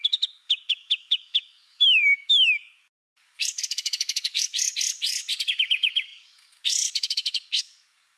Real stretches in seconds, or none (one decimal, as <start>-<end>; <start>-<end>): none